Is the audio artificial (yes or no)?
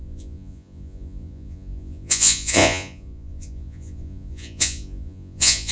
yes